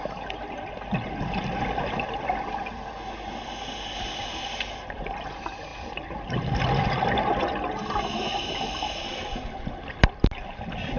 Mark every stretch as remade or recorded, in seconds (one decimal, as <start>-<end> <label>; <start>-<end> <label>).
0.0-11.0 recorded